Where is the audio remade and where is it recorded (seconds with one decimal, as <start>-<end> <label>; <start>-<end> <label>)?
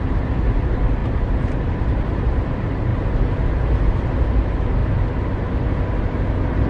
0.0-2.9 remade; 2.9-4.2 recorded; 4.2-4.8 remade; 4.8-6.0 recorded; 6.0-6.7 remade